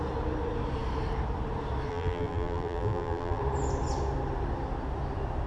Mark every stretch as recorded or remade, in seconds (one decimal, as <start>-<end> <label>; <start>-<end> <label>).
0.0-1.9 recorded; 1.9-3.4 remade; 3.4-5.5 recorded